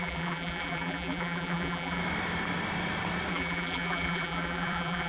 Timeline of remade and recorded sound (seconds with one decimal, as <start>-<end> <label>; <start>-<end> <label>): 0.0-2.0 remade; 2.0-3.3 recorded; 3.3-5.1 remade